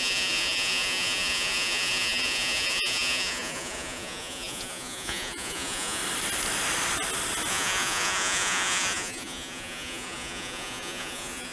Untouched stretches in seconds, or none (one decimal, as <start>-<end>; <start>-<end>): 6.0-7.5